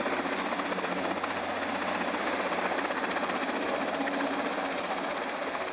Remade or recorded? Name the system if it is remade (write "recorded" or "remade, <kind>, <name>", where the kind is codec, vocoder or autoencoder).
recorded